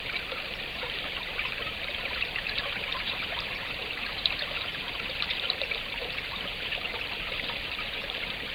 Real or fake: fake